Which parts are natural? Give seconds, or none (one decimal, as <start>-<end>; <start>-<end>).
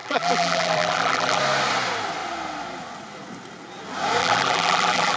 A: 1.4-4.2